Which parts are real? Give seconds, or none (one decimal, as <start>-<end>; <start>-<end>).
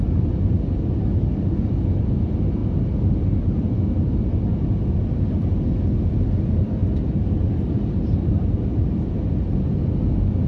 0.0-10.5